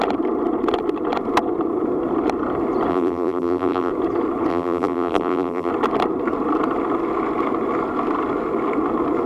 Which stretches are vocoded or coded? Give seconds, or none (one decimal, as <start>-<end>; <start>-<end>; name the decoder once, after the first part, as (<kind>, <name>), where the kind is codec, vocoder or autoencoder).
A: 2.9-3.9 (vocoder, BigVGAN v2); 4.5-5.7